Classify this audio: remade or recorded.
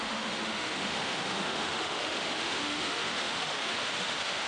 remade